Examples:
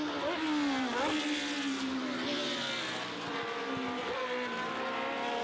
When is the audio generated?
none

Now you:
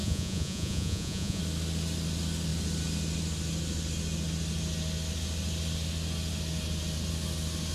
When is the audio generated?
0.0-1.4

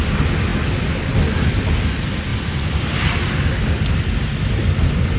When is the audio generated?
none

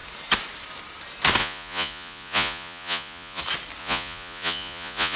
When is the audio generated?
1.4-3.4; 3.8-5.2

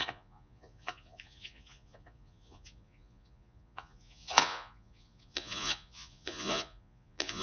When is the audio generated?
0.0-7.4